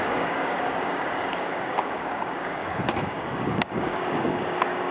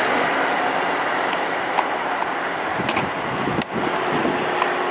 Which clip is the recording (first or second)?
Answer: second